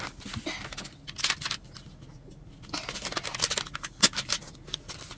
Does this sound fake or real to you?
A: real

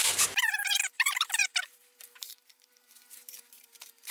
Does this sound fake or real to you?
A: fake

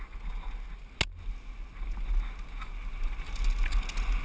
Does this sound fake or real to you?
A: real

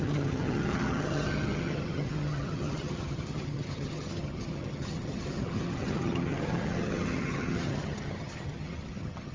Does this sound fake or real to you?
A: fake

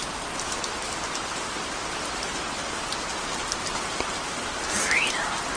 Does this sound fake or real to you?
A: real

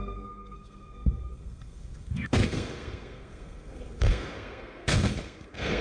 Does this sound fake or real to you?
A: fake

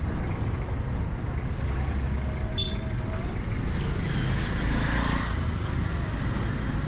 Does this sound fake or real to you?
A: real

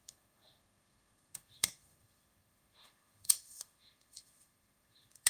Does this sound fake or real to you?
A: fake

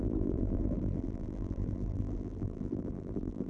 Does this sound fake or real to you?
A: fake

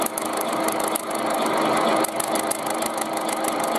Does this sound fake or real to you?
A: real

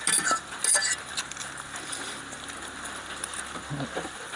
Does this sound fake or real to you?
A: real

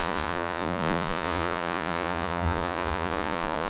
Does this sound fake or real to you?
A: fake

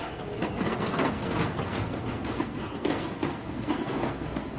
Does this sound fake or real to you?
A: fake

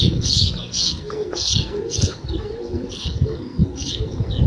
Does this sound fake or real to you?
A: fake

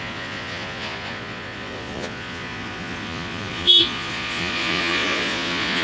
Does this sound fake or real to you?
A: fake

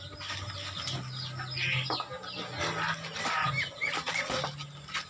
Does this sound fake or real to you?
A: real